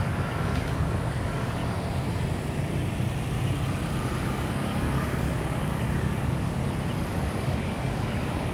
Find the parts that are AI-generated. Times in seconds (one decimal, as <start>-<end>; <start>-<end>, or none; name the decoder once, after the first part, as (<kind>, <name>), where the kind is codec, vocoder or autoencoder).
0.0-1.6 (codec, DAC); 4.2-6.6; 7.2-8.5